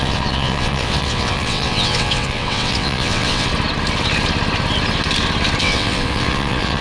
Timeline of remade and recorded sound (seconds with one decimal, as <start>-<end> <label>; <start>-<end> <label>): 0.0-3.5 remade; 3.5-5.6 recorded; 5.6-6.8 remade